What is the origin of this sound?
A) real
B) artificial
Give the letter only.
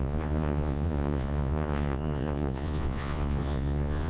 B